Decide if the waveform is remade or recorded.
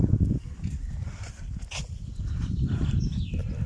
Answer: recorded